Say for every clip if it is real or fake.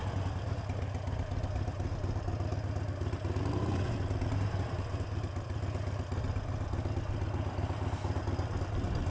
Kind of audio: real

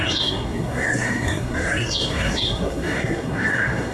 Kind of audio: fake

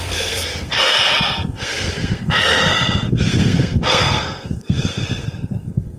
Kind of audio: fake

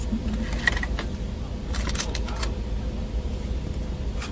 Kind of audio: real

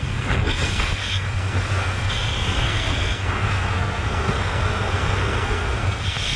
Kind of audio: fake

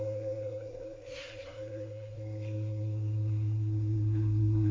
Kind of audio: fake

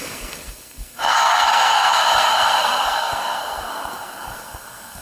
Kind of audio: fake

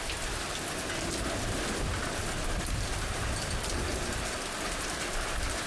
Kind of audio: real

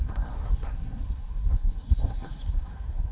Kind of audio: fake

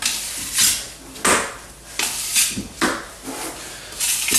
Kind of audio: real